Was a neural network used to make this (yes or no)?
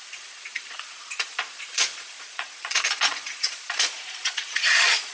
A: yes